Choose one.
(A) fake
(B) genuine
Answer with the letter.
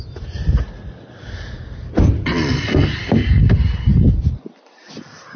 B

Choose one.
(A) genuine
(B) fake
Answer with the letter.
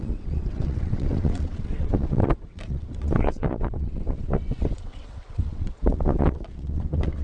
B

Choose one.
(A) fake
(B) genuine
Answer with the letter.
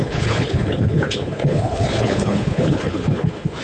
A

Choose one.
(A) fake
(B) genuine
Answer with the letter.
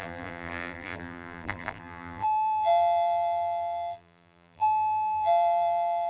A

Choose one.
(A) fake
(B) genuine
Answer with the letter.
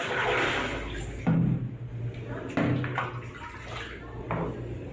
B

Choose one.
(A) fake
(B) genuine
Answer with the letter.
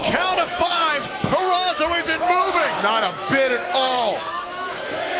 A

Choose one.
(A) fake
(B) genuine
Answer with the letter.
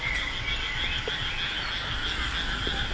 B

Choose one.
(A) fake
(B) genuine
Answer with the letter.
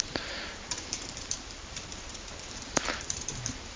A